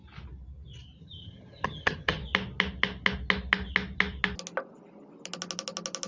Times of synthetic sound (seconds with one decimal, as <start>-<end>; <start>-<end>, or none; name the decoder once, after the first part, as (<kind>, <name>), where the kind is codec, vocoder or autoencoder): 1.0-2.2 (vocoder, HiFi-GAN)